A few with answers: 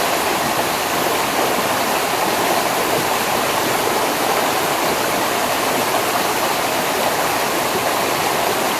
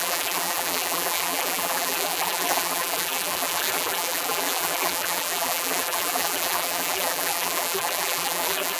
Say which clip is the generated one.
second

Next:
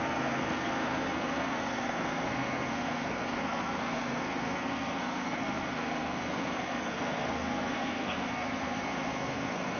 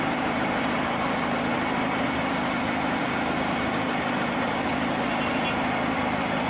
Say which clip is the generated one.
first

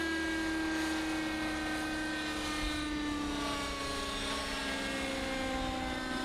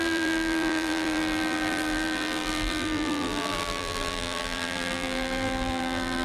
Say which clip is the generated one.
second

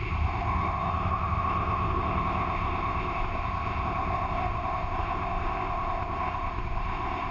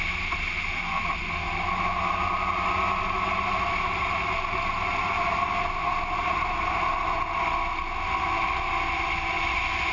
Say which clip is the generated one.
first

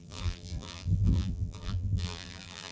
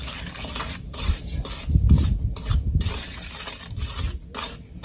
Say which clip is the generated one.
first